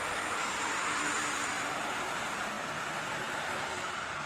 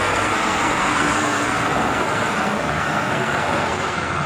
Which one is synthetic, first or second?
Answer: second